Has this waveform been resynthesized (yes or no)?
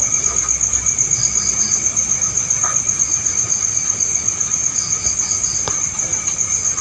no